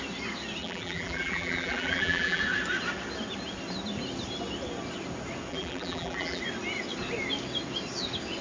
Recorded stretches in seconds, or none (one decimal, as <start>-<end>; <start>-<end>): 0.0-0.6; 2.4-5.5; 6.4-8.4